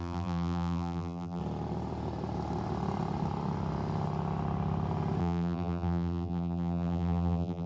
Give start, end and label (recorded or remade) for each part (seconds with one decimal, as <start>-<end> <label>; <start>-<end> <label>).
0.0-1.4 remade; 1.4-5.2 recorded; 5.2-7.7 remade

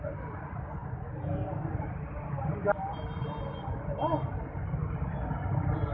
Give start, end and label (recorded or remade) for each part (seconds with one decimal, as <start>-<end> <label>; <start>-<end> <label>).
0.0-5.9 recorded

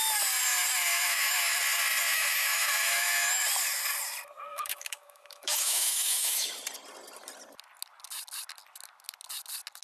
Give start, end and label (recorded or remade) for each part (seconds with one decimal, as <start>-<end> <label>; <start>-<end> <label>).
0.0-0.9 recorded; 0.9-1.6 remade; 1.6-2.1 recorded; 2.1-3.4 remade; 3.4-4.5 recorded; 4.5-6.5 remade; 6.5-9.8 recorded

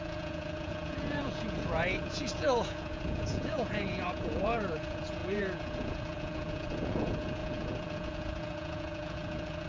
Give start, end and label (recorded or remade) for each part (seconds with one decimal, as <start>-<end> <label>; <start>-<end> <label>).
0.0-9.7 remade

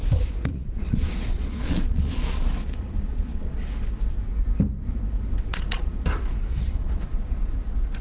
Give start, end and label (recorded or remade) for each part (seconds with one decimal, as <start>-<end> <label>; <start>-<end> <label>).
0.0-0.5 recorded; 0.5-3.7 remade; 3.7-5.5 recorded; 5.5-6.0 remade; 6.0-6.5 recorded; 6.5-7.5 remade; 7.5-8.0 recorded

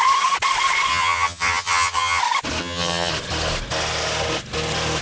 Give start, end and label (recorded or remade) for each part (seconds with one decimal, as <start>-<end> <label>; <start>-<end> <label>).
0.0-0.9 recorded; 0.9-2.2 remade; 2.2-2.6 recorded; 2.6-3.1 remade; 3.1-5.0 recorded

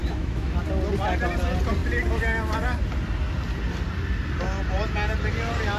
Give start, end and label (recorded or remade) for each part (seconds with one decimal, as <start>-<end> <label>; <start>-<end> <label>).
0.0-0.6 remade; 0.6-5.8 recorded

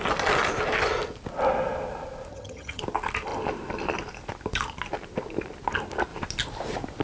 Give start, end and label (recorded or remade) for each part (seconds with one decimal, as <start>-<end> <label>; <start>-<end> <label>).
0.0-2.3 recorded; 2.3-2.8 remade; 2.8-7.0 recorded